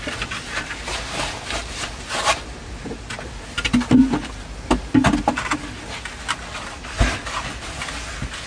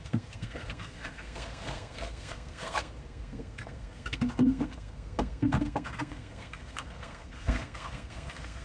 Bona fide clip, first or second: first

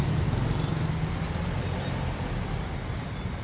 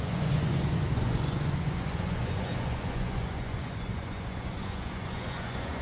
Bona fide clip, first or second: first